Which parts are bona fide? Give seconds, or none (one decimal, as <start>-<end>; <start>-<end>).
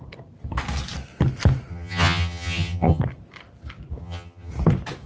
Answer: 0.0-1.7; 3.0-4.0; 4.5-5.1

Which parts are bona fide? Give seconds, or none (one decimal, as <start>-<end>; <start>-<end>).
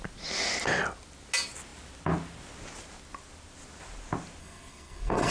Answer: 0.0-4.4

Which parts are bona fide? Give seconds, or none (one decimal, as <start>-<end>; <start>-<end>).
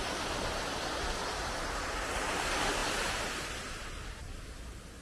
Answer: 0.0-5.0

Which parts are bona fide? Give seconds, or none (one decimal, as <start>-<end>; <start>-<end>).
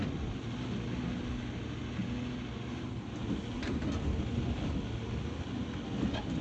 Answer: 0.0-6.4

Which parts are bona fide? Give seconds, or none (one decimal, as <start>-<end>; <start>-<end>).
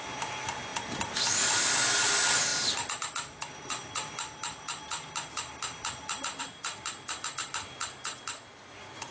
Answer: 0.0-9.1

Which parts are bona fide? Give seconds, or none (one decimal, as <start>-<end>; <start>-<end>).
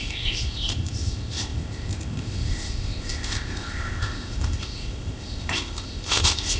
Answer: none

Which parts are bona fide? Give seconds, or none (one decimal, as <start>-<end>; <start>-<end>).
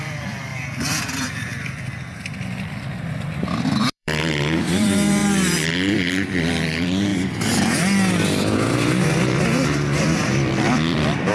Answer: 1.5-2.8; 5.2-6.1